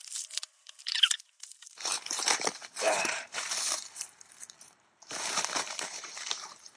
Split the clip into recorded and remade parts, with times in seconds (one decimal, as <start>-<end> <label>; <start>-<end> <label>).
0.0-6.8 remade